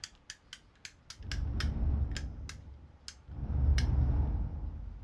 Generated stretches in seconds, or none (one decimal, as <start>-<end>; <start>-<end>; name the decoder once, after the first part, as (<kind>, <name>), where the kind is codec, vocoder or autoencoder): none

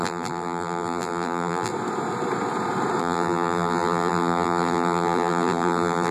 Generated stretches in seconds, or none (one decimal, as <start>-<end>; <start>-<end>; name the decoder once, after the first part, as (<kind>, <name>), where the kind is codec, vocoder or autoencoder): 0.0-1.7 (vocoder, BigVGAN v2); 3.0-6.1

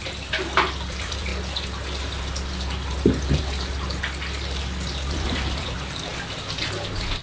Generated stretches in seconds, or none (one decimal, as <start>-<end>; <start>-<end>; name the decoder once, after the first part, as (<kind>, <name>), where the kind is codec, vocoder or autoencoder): 0.0-1.3 (vocoder, BigVGAN v2); 5.1-6.1

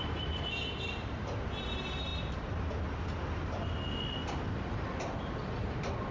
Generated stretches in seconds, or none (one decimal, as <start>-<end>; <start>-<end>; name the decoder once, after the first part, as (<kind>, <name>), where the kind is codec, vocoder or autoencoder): none